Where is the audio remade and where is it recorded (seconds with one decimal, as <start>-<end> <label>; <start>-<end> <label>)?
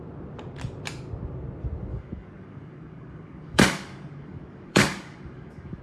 0.0-1.9 recorded; 1.9-5.8 remade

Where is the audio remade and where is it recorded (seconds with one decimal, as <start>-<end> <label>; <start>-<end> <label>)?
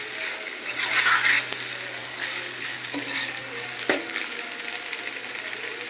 0.0-2.0 recorded; 2.0-4.6 remade; 4.6-5.9 recorded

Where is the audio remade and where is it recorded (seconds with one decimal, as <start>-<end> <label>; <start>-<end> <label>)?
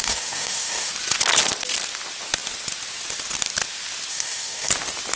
0.0-0.9 remade; 0.9-4.1 recorded; 4.1-4.7 remade; 4.7-5.2 recorded